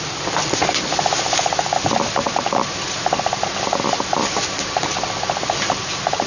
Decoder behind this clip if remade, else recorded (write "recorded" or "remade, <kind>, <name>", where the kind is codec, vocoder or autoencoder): recorded